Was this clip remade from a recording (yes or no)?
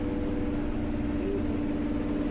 no